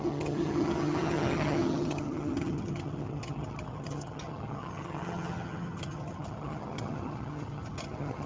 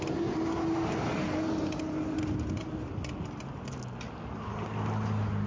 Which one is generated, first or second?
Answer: first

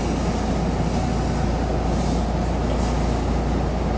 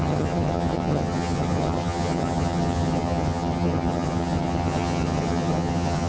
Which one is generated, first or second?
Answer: second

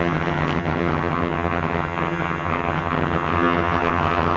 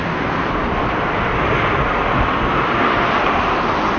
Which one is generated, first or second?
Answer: first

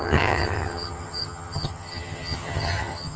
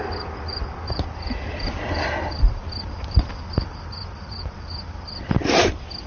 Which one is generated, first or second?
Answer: first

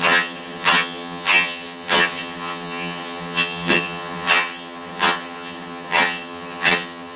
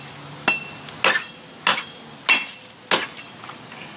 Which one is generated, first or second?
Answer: first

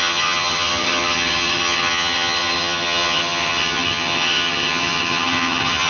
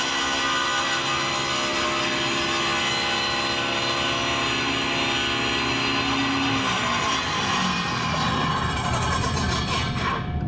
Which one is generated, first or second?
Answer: first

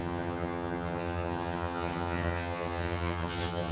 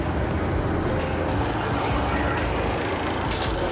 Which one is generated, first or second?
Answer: first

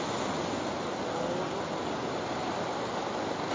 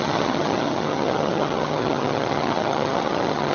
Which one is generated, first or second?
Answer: second